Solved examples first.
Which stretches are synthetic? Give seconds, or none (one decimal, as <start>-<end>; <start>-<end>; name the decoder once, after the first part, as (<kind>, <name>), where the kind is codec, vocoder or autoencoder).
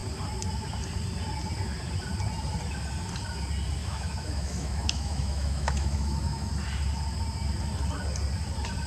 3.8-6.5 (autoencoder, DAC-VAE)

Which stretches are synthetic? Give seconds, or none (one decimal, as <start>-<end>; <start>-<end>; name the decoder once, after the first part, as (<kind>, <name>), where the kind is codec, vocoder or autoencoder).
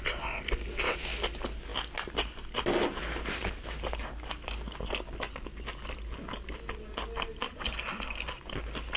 none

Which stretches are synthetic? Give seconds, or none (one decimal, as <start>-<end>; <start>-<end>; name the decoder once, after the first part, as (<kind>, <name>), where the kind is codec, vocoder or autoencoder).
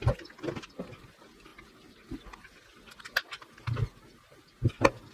none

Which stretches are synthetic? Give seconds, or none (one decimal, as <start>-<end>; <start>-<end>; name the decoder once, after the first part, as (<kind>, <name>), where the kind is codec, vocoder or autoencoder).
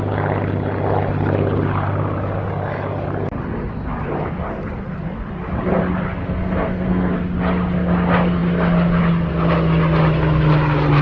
6.2-7.1 (codec, SNAC)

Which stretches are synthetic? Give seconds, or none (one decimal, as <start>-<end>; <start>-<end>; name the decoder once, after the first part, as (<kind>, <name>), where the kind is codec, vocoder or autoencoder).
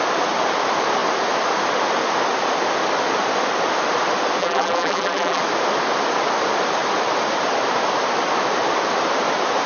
4.4-5.4 (vocoder, BigVGAN v2)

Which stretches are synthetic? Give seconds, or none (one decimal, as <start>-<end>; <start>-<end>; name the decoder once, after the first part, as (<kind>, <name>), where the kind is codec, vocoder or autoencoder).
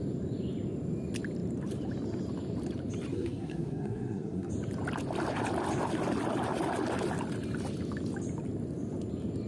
3.1-4.5 (codec, SNAC)